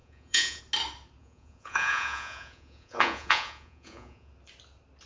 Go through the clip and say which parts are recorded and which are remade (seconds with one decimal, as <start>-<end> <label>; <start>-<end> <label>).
0.0-0.6 remade; 0.6-1.2 recorded; 1.2-4.3 remade; 4.3-5.1 recorded